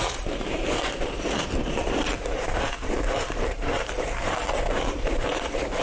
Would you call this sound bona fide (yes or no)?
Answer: no